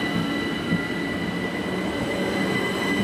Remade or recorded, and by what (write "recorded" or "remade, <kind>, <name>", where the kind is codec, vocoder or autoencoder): recorded